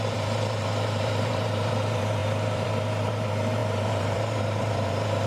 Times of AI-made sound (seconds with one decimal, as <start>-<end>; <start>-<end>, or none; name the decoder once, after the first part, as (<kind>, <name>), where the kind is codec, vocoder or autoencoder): 0.0-5.3 (vocoder, BigVGAN v2)